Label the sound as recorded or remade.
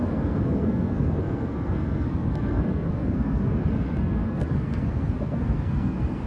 remade